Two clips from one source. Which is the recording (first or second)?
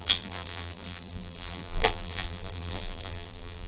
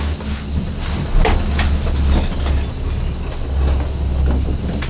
second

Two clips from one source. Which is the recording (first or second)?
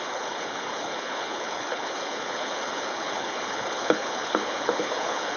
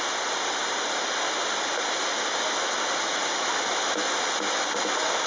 second